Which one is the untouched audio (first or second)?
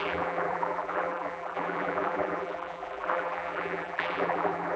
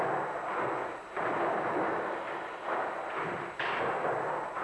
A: second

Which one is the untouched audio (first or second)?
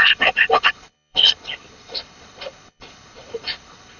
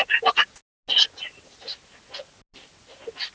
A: second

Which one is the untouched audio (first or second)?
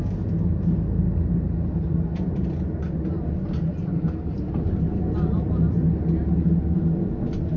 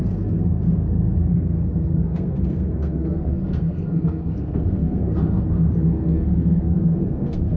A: first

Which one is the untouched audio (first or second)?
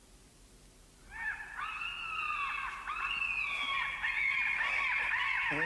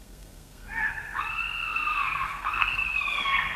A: first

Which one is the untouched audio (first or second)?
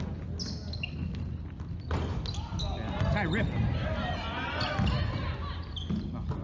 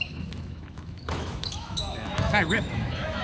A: first